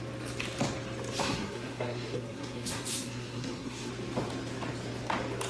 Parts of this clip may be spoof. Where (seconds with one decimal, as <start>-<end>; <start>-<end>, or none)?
1.2-3.9